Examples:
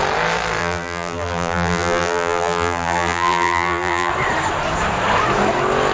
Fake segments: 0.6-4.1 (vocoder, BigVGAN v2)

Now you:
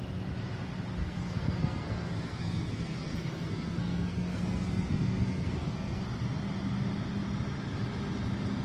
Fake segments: 1.0-6.0 (codec, SNAC)

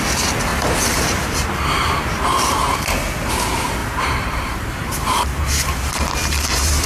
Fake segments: 0.5-1.5 (vocoder, BigVGAN v2); 3.8-6.1

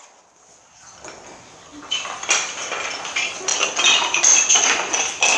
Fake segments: 1.7-2.9 (vocoder, BigVGAN v2)

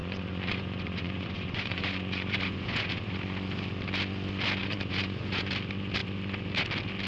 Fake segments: 0.0-3.2 (vocoder, Vocos); 4.6-5.5